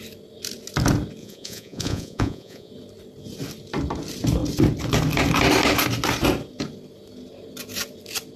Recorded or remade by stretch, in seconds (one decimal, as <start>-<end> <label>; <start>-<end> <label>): 0.0-1.2 recorded; 1.2-2.7 remade; 2.7-8.4 recorded